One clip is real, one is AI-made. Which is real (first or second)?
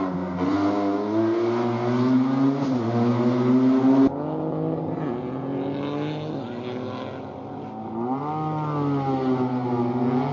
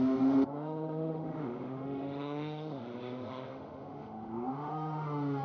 first